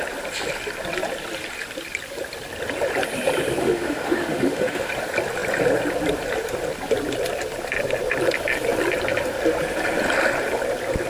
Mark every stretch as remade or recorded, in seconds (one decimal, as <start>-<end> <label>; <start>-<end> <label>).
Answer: 0.0-3.6 recorded; 3.6-4.9 remade; 4.9-11.1 recorded